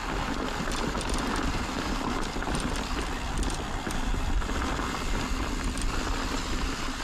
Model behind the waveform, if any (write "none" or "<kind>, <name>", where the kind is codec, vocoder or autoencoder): none